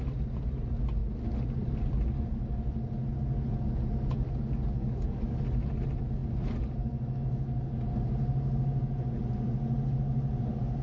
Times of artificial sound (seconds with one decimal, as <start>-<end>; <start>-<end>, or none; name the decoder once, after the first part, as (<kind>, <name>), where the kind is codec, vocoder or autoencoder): 4.8-5.4 (codec, DAC)